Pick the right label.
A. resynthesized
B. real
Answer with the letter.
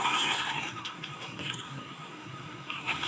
A